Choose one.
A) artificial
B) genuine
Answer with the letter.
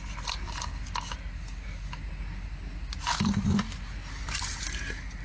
B